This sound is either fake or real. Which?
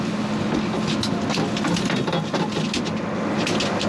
real